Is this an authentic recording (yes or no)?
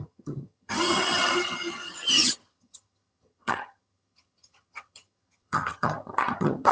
no